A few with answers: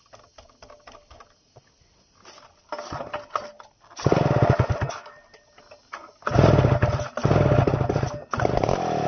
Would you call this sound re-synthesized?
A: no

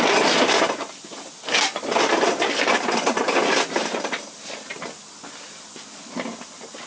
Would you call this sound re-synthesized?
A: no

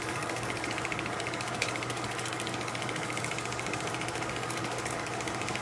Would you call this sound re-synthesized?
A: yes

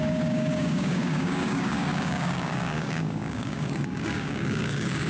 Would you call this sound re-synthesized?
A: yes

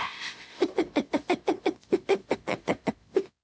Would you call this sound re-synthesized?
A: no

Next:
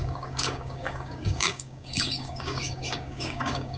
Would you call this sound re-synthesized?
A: yes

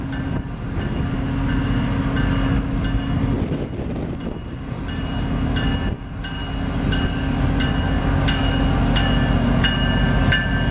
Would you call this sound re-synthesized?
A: no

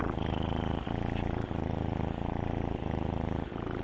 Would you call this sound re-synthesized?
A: no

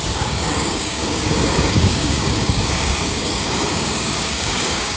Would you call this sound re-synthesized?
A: yes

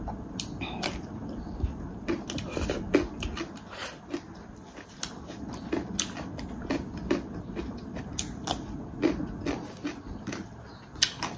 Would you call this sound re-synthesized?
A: no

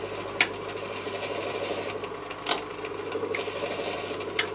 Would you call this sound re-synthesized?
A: no